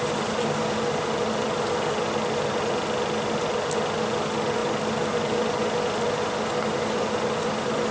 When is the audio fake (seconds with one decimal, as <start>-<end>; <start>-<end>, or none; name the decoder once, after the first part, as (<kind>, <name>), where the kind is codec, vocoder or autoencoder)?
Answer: none